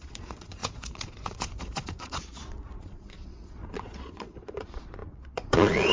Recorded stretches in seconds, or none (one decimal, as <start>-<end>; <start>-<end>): none